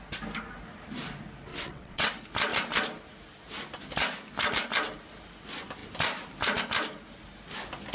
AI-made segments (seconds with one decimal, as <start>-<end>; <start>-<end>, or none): 1.5-2.1